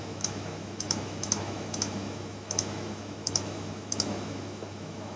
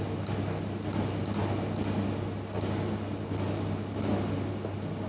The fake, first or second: first